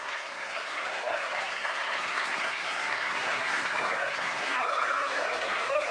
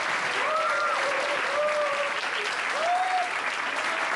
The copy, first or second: first